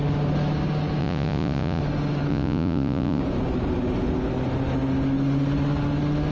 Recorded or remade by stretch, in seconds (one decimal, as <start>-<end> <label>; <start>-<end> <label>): 0.0-1.0 recorded; 1.0-1.8 remade; 1.8-2.3 recorded; 2.3-3.2 remade; 3.2-6.3 recorded